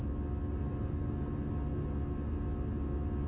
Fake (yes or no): no